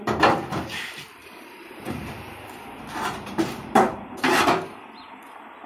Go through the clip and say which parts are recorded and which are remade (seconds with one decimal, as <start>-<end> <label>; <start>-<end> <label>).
0.0-1.2 recorded; 1.2-4.4 remade; 4.4-5.7 recorded